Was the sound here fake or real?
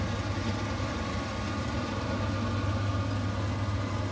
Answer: real